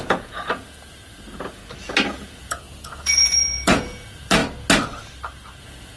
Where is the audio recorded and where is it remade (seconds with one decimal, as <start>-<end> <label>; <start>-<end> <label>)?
0.0-1.6 remade; 1.6-2.1 recorded; 2.1-4.4 remade; 4.4-5.6 recorded; 5.6-6.0 remade